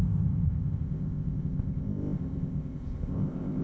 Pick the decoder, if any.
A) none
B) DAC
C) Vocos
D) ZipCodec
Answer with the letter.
D